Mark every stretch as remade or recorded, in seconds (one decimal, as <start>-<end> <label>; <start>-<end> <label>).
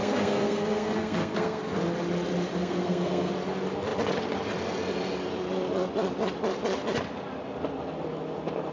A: 0.0-1.6 remade; 1.6-2.5 recorded; 2.5-3.3 remade; 3.3-8.7 recorded